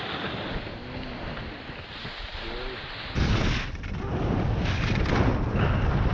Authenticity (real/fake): real